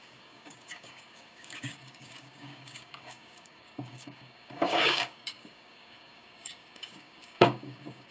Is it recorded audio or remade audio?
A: remade